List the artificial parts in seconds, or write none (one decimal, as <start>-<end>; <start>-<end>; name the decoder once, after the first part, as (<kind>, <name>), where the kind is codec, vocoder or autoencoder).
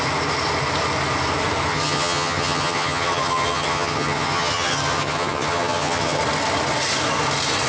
1.7-6.2 (vocoder, HiFi-GAN)